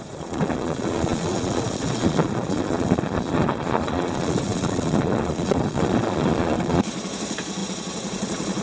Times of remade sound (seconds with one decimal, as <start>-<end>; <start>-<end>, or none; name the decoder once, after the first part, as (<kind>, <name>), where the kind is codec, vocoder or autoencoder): 0.0-8.6 (vocoder, Vocos)